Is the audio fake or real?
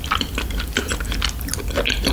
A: real